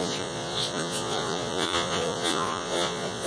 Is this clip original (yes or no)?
no